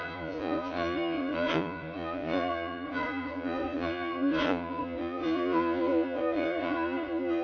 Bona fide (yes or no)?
no